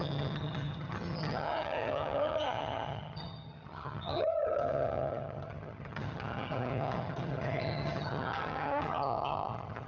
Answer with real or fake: fake